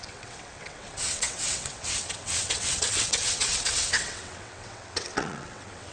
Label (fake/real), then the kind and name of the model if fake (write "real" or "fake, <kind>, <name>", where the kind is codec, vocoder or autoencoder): fake, vocoder, WaveNeXt